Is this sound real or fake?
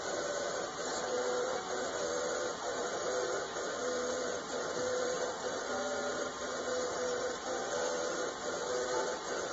fake